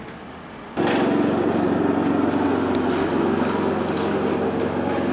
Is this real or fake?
real